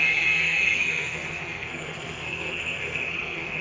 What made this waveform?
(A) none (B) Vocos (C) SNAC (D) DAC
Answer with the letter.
C